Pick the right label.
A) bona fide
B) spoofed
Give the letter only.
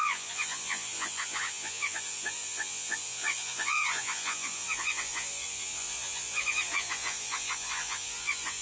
B